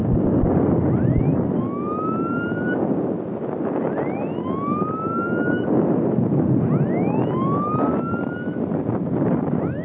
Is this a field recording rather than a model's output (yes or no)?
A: yes